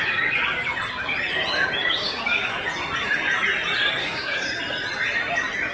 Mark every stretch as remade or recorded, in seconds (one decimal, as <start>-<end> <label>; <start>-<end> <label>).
0.0-1.8 recorded; 1.8-2.5 remade; 2.5-4.0 recorded; 4.0-4.6 remade; 4.6-5.7 recorded